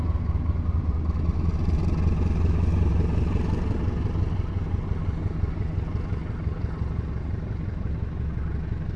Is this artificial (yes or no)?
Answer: no